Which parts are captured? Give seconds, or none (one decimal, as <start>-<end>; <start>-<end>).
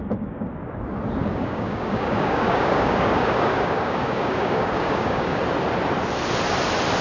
0.5-1.2; 5.4-7.0